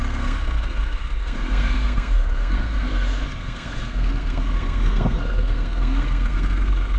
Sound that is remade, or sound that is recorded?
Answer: remade